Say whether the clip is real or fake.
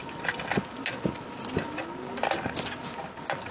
real